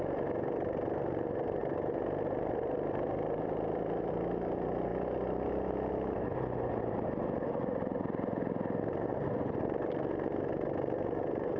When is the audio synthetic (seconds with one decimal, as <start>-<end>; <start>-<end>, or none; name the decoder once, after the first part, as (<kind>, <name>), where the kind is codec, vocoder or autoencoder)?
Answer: 1.6-4.1 (vocoder, BigVGAN v2)